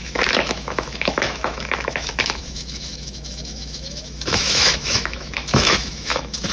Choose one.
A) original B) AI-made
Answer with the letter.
B